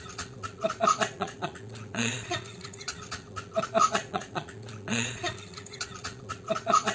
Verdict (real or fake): fake